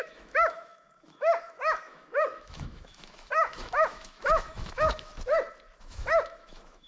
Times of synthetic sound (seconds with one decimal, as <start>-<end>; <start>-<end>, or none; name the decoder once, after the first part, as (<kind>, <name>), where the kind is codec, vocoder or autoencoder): 0.0-5.1 (autoencoder, DAC-VAE); 5.8-6.9